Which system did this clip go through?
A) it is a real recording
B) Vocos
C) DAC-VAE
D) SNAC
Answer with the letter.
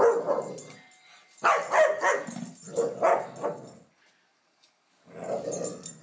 A